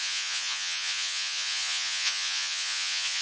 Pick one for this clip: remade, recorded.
remade